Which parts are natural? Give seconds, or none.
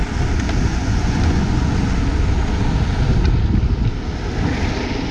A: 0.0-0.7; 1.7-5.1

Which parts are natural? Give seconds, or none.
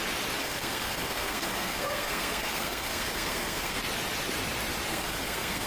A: 0.0-0.4; 3.8-4.9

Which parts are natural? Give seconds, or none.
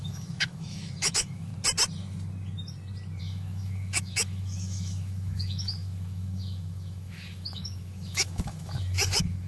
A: 1.5-3.2